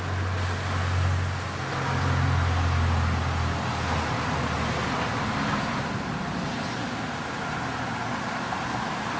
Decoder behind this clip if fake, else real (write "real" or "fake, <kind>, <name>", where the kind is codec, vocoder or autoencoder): real